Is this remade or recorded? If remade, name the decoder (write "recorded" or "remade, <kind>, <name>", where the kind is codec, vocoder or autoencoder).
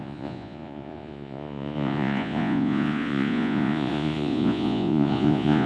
remade, vocoder, Vocos